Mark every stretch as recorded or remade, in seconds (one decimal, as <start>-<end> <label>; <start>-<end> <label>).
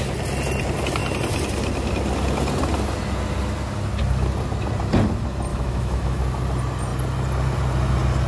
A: 0.0-5.5 recorded; 5.5-6.2 remade; 6.2-8.3 recorded